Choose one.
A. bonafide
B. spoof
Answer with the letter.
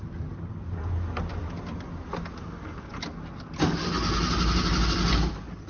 A